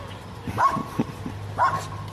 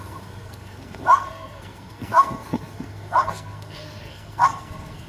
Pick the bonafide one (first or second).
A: first